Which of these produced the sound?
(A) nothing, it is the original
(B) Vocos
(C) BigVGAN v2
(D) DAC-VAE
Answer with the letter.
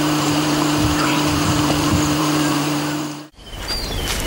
C